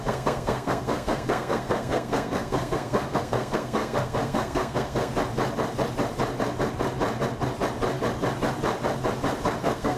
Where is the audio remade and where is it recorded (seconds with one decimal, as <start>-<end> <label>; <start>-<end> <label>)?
0.0-5.1 remade; 5.1-9.6 recorded; 9.6-10.0 remade